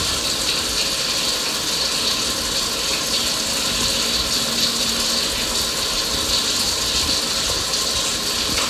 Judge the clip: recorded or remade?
recorded